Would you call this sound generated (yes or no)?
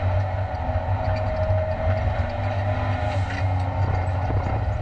no